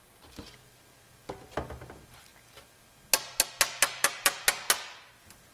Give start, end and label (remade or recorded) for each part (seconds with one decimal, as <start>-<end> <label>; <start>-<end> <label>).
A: 0.0-5.5 recorded